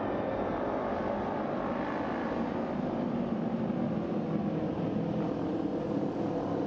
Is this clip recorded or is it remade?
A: recorded